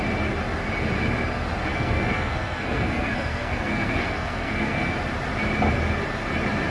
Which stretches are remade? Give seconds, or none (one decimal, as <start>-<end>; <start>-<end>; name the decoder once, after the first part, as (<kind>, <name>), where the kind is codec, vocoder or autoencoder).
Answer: 1.7-4.9 (codec, SNAC)